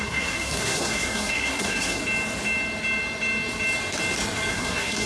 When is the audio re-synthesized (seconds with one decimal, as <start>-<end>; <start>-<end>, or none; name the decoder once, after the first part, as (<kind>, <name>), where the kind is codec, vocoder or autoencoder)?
0.0-2.0 (codec, SNAC); 4.5-5.1